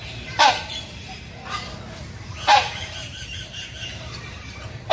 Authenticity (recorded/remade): remade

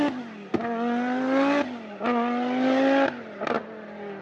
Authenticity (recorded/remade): recorded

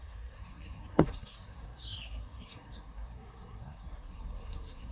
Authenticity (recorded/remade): remade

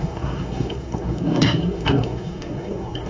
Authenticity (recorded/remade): remade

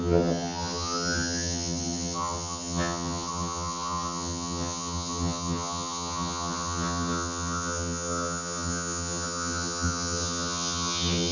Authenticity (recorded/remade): remade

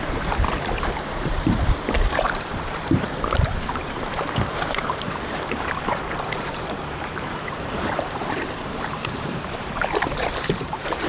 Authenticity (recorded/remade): remade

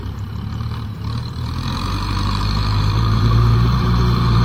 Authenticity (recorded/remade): remade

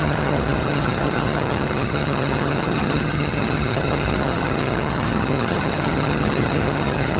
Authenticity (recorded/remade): remade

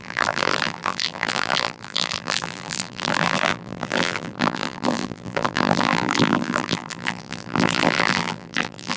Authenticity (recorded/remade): remade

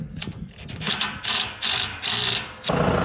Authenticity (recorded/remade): recorded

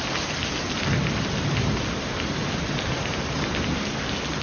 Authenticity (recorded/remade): recorded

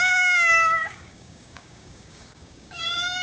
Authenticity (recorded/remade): remade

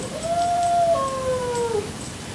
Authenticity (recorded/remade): recorded